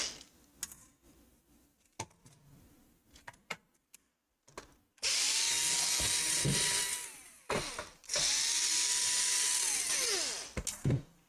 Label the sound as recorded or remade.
recorded